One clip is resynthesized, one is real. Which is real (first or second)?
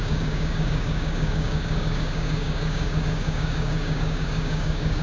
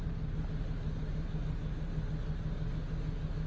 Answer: second